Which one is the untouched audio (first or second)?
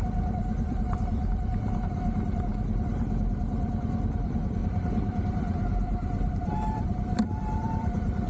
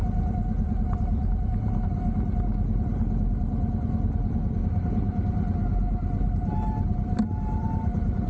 second